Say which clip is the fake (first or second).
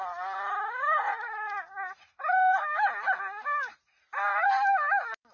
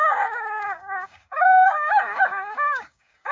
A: second